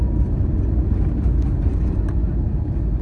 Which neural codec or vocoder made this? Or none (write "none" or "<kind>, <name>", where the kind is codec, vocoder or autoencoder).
none